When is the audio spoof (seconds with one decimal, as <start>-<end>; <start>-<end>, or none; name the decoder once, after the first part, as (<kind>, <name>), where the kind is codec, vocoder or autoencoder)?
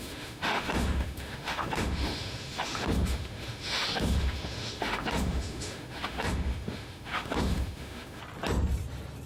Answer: 0.0-8.2 (autoencoder, DAC-VAE)